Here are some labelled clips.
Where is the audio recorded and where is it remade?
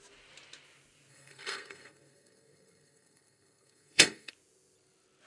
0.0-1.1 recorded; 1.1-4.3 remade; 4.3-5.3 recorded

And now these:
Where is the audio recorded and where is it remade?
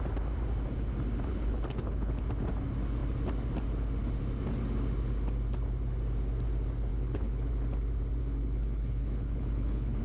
0.0-1.3 recorded; 1.3-2.2 remade; 2.2-6.9 recorded; 6.9-7.5 remade; 7.5-8.2 recorded; 8.2-10.0 remade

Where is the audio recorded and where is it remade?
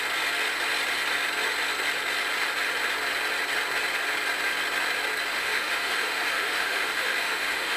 0.0-5.3 recorded; 5.3-7.8 remade